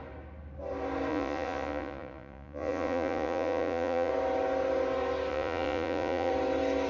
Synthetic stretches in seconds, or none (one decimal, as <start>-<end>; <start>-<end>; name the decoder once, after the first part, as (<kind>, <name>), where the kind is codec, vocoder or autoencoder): 1.1-4.1 (vocoder, Vocos); 5.3-6.3